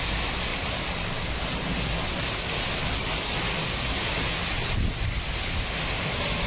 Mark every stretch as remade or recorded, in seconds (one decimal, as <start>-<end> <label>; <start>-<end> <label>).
0.0-5.5 recorded; 5.5-6.1 remade; 6.1-6.5 recorded